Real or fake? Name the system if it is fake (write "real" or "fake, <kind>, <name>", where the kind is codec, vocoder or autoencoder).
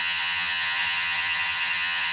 fake, vocoder, HiFi-GAN